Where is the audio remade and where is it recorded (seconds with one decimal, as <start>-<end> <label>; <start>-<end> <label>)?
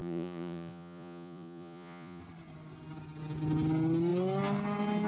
0.0-2.2 remade; 2.2-5.1 recorded